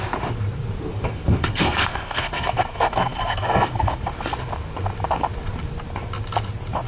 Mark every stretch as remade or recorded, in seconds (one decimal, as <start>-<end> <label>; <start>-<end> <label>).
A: 0.0-0.9 recorded; 0.9-4.0 remade; 4.0-6.9 recorded